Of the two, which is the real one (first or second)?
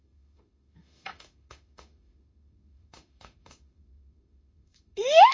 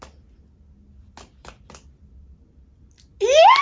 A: second